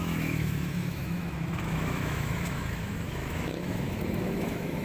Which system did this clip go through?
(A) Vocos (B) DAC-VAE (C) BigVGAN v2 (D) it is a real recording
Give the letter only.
B